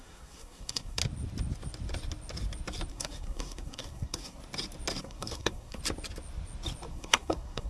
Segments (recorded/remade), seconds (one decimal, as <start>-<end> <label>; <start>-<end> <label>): 0.0-1.0 remade; 1.0-2.9 recorded; 2.9-4.4 remade; 4.4-5.0 recorded; 5.0-5.8 remade; 5.8-6.9 recorded; 6.9-7.7 remade